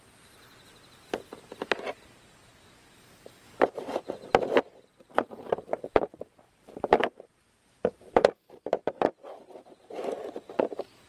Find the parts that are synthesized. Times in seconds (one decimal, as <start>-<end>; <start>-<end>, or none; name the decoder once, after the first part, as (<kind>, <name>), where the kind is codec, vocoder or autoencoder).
6.1-9.8 (vocoder, BigVGAN v2)